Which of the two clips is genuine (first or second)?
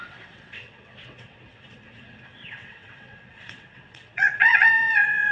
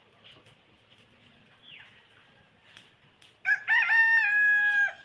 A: second